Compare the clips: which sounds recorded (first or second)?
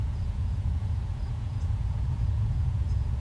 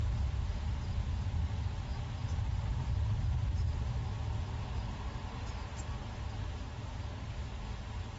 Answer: second